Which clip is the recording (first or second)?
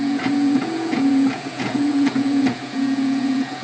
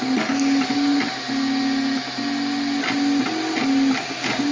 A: second